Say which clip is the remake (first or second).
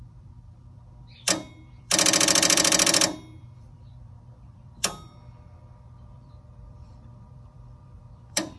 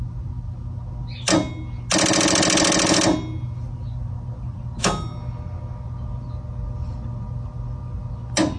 first